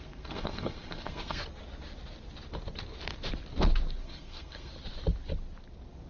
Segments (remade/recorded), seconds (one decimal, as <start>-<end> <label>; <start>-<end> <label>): 0.0-1.4 remade; 1.4-4.0 recorded; 4.0-4.7 remade; 4.7-6.1 recorded